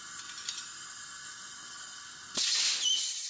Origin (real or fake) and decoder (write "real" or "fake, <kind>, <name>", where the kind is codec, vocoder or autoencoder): real